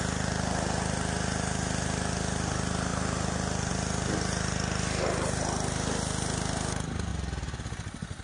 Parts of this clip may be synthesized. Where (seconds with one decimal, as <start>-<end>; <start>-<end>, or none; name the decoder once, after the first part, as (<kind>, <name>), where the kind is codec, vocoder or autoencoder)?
7.1-8.2 (vocoder, BigVGAN v2)